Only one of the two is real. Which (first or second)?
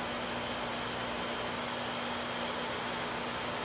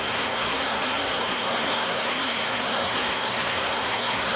first